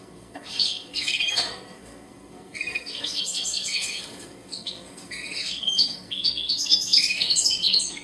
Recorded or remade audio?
remade